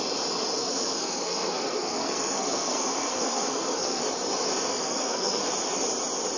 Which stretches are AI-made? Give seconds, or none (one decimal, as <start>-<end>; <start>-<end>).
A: 0.6-4.0; 4.7-5.4